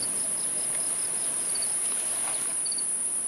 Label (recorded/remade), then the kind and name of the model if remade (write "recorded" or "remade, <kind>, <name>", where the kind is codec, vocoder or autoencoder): recorded